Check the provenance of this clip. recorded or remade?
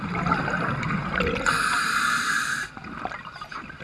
recorded